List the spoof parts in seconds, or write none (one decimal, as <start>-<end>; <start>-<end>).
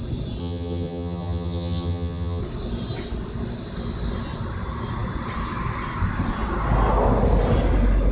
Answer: 0.4-2.4